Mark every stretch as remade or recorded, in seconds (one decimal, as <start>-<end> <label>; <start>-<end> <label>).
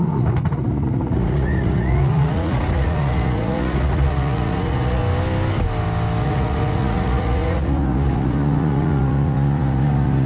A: 0.0-5.0 remade; 5.0-6.2 recorded; 6.2-10.3 remade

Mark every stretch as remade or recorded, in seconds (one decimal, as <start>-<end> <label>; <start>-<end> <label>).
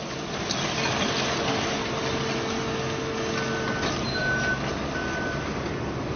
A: 0.0-6.2 recorded